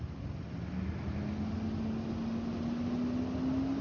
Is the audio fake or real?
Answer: real